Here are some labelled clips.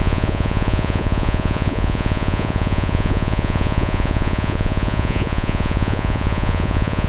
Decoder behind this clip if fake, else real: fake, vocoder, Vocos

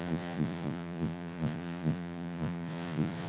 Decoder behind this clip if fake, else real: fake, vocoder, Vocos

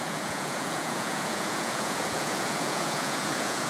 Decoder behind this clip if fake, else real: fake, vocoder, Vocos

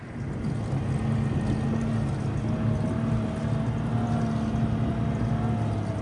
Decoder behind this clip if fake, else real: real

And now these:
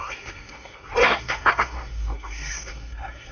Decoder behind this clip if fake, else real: fake, codec, SNAC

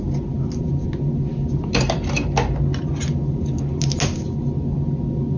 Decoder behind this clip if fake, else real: real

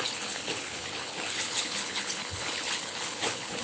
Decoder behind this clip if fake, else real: fake, codec, HILCodec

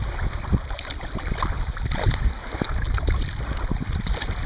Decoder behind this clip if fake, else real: real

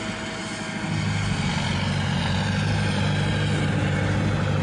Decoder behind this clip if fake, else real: real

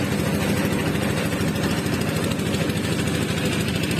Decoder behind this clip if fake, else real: real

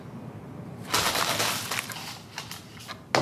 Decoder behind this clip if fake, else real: real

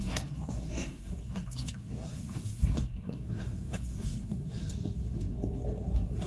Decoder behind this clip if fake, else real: fake, codec, SNAC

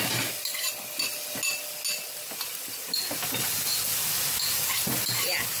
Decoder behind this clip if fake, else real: real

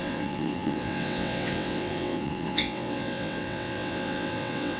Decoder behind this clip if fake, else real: fake, vocoder, WaveNeXt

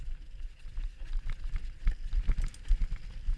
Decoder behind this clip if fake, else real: real